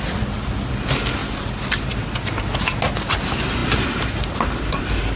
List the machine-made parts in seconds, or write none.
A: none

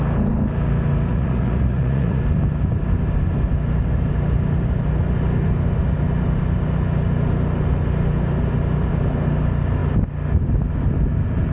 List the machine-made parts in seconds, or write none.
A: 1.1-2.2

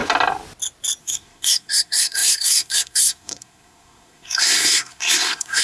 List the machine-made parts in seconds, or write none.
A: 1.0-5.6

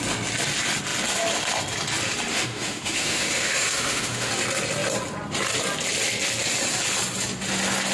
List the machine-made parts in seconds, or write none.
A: 2.3-4.3

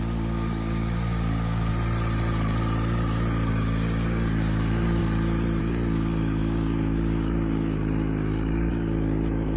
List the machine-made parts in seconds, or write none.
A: 0.0-1.7; 3.5-5.0; 5.6-9.6